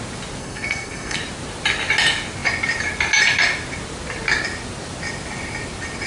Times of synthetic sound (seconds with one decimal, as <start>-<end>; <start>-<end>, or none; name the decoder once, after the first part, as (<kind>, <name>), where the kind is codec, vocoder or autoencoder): 0.4-1.2 (codec, SNAC)